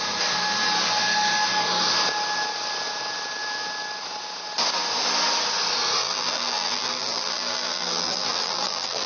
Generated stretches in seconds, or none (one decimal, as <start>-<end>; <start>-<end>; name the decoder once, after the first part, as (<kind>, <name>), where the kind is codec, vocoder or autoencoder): 6.0-9.1 (vocoder, BigVGAN v2)